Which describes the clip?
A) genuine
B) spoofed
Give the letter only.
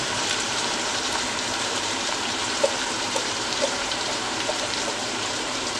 B